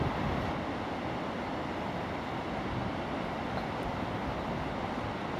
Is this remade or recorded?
recorded